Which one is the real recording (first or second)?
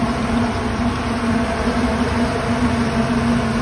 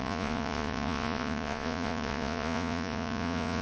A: first